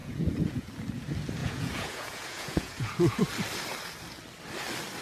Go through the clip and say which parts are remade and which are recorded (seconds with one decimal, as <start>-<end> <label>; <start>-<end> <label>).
0.0-0.7 remade; 0.7-1.4 recorded; 1.4-3.2 remade; 3.2-5.0 recorded